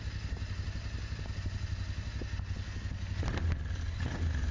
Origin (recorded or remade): recorded